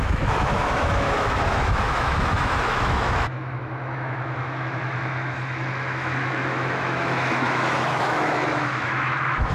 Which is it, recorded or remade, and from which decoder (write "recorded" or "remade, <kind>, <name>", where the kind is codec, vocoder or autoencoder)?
remade, autoencoder, DAC-VAE